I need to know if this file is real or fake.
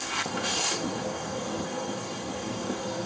fake